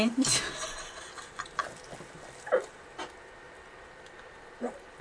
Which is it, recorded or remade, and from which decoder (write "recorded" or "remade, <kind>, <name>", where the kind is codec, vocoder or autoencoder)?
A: remade, vocoder, BigVGAN v2